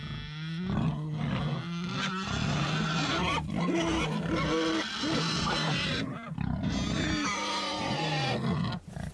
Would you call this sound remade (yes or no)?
no